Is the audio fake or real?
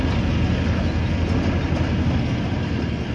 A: real